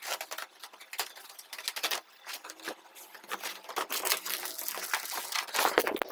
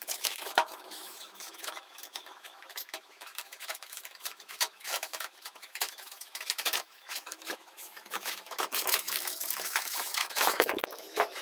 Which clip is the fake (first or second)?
second